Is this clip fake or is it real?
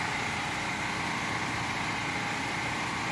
real